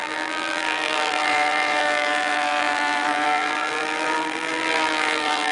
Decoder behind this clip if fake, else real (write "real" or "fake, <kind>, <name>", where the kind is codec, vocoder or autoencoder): fake, vocoder, BigVGAN v2